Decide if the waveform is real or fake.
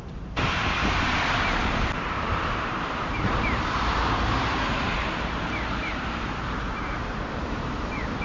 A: fake